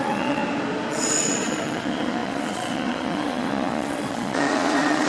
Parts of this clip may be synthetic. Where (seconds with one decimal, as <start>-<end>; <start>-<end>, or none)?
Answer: 0.0-0.4; 0.9-5.1